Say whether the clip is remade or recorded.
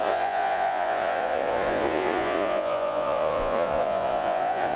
remade